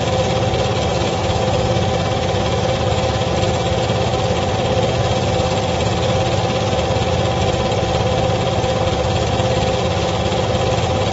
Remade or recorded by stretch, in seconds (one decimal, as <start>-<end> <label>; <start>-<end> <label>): 0.0-0.9 recorded; 0.9-3.3 remade; 3.3-11.1 recorded